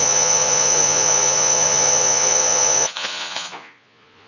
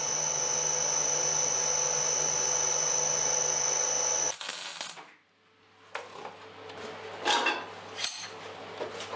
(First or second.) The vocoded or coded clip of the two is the first